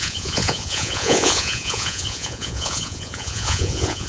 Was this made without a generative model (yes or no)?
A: no